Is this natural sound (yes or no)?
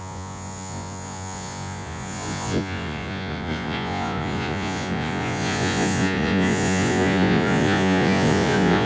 no